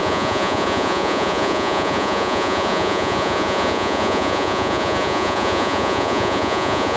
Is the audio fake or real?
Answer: fake